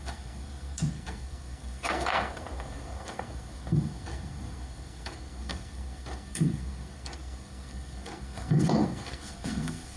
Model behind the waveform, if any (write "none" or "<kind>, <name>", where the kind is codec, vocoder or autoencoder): codec, SNAC